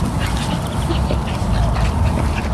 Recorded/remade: recorded